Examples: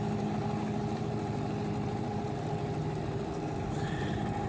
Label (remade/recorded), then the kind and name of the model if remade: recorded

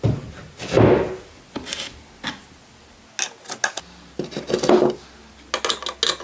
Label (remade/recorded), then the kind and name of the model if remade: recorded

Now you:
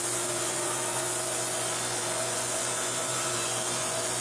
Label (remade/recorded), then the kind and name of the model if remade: remade, vocoder, Vocos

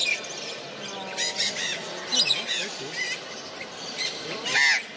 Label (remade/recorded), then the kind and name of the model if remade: recorded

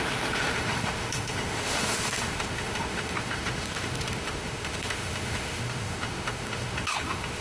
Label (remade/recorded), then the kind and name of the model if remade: remade, autoencoder, DAC-VAE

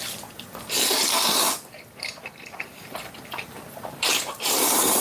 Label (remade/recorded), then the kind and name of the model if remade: remade, vocoder, BigVGAN v2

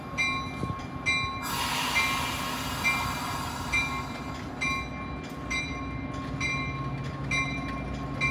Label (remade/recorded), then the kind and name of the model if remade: recorded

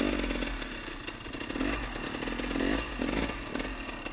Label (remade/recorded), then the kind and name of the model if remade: recorded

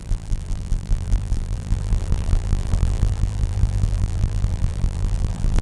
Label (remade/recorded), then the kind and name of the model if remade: remade, vocoder, BigVGAN v2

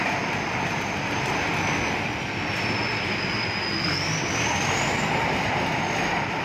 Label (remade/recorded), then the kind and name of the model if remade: recorded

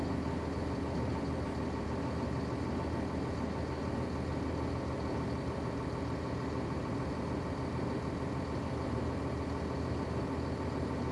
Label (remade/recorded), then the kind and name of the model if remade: recorded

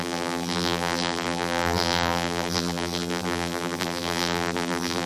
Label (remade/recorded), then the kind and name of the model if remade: remade, vocoder, BigVGAN v2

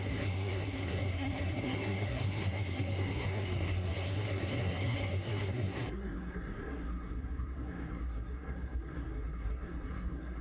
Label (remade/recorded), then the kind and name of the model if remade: remade, codec, SNAC